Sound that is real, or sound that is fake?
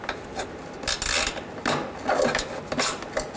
real